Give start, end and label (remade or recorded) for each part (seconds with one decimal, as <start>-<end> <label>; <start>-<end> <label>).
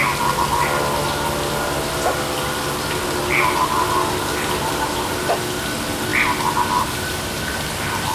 0.0-8.1 recorded